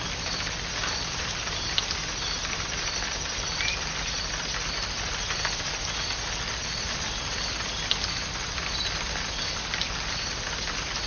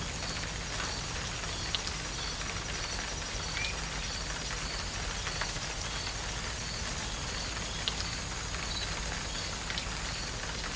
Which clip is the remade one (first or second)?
first